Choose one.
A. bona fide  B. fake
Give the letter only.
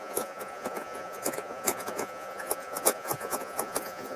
B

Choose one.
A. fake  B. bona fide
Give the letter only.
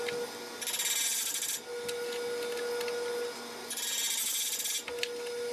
B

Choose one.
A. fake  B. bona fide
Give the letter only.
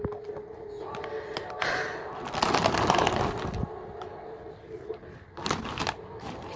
B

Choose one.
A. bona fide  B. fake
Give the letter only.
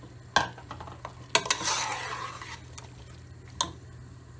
A